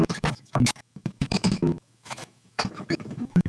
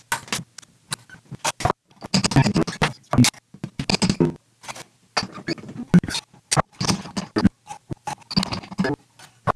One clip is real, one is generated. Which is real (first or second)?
second